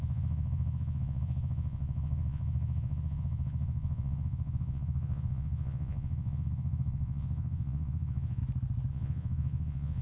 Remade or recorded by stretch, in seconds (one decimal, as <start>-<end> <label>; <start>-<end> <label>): 0.0-8.4 remade; 8.4-8.9 recorded; 8.9-10.0 remade